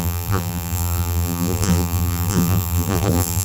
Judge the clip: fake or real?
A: fake